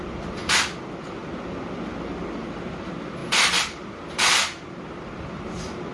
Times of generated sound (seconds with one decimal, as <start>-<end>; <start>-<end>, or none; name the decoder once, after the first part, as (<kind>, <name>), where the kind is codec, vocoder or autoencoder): none